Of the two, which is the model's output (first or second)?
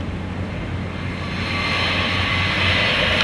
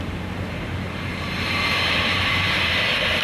second